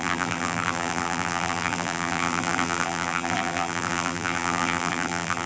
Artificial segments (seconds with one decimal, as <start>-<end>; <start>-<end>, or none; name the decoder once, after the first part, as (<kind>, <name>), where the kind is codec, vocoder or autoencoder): 0.0-5.5 (vocoder, BigVGAN v2)